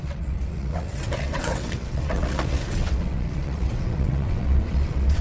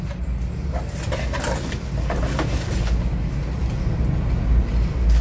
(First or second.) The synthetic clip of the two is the first